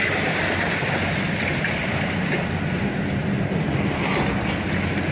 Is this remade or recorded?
recorded